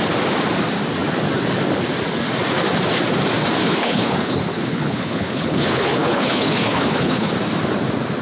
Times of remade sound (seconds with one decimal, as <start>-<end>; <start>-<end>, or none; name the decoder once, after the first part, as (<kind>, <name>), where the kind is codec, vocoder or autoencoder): 3.6-7.3 (codec, HILCodec)